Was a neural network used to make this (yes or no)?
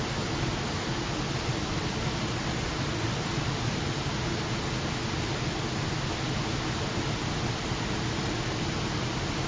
no